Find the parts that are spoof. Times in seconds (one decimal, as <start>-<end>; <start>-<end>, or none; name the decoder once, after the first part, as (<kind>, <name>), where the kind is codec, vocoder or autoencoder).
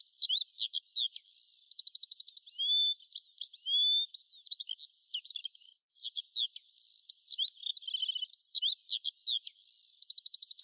5.4-6.2 (autoencoder, DAC-VAE); 8.0-8.7